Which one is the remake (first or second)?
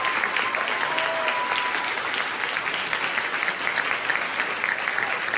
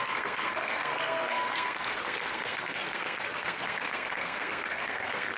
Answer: second